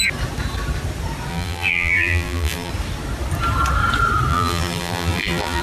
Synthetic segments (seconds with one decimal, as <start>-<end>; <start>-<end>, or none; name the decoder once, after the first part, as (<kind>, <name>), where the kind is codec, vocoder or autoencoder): 1.3-2.7 (vocoder, BigVGAN v2); 4.3-5.6